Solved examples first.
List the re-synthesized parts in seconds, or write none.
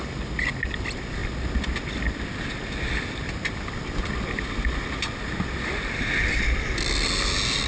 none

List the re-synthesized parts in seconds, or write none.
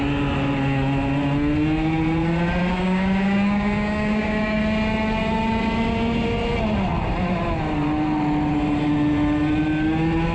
2.7-4.6 (codec, DAC)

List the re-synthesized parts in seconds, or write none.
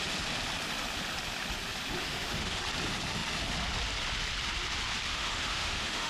2.0-2.6 (autoencoder, DAC-VAE); 5.1-6.1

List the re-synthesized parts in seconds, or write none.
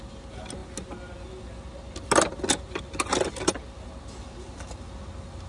none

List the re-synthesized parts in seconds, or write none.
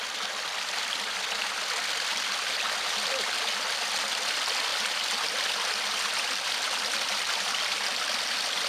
none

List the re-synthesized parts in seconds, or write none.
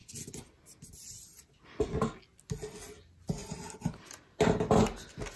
none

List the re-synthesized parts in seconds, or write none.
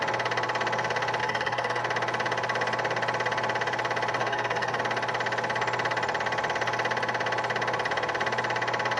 1.2-1.8 (codec, SNAC); 4.2-4.8